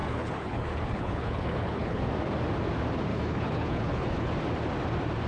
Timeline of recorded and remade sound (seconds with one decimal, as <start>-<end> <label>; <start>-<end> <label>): 0.0-2.0 remade; 2.0-3.1 recorded; 3.1-4.3 remade; 4.3-5.3 recorded